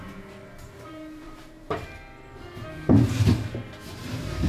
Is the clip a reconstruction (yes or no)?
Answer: yes